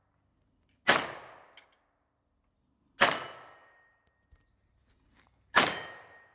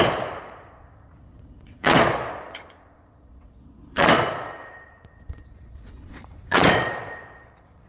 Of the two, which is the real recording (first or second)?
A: first